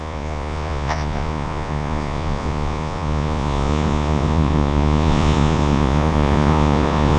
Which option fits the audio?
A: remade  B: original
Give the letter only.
A